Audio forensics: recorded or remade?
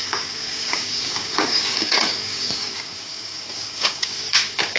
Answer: remade